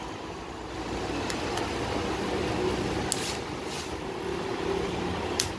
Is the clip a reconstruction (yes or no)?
no